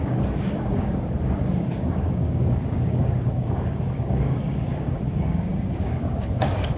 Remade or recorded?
remade